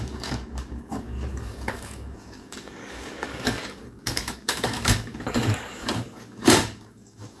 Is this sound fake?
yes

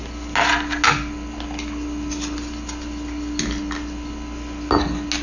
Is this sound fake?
no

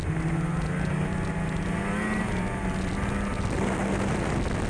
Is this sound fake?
no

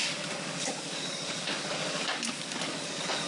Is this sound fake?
yes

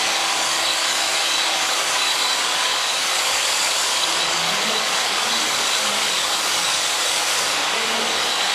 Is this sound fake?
yes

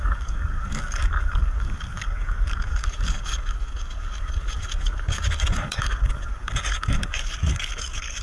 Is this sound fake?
yes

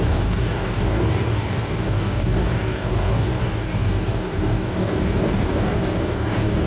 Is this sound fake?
yes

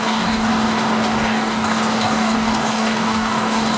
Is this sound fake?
yes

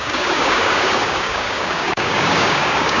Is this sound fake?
yes